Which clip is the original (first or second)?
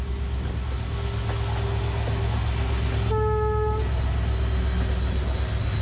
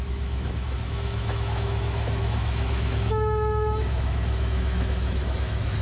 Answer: first